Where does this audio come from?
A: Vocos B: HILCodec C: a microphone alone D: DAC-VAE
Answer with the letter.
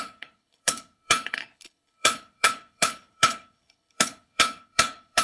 B